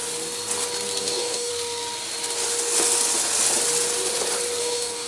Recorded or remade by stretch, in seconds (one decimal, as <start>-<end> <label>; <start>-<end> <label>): 0.0-1.0 recorded; 1.0-1.5 remade; 1.5-4.6 recorded; 4.6-5.1 remade